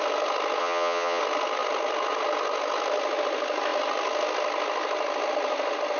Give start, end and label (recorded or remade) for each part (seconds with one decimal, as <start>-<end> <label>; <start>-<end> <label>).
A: 0.0-0.6 recorded; 0.6-1.2 remade; 1.2-6.0 recorded